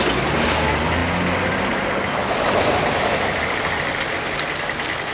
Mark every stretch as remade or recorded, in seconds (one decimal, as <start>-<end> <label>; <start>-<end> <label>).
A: 0.0-5.1 recorded